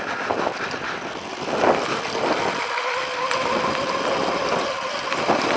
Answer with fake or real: real